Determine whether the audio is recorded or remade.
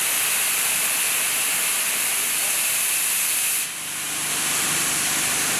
remade